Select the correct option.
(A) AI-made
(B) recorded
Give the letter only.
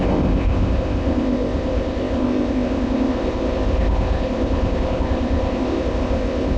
A